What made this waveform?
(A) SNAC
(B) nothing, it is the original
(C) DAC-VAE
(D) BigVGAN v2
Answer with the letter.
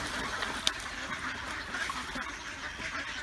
B